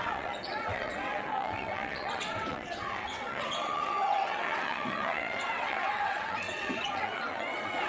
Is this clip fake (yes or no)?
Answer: yes